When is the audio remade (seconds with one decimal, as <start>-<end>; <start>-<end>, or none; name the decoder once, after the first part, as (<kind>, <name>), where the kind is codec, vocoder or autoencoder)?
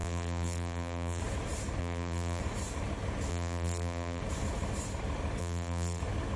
0.0-1.2 (vocoder, BigVGAN v2); 1.8-2.4; 3.3-4.2; 5.4-6.0